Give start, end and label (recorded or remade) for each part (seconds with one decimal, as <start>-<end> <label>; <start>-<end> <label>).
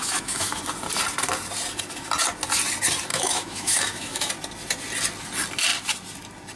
0.0-0.6 remade; 0.6-3.1 recorded; 3.1-4.3 remade; 4.3-6.6 recorded